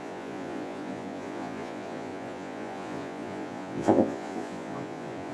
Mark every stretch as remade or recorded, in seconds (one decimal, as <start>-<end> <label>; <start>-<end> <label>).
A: 0.0-5.3 remade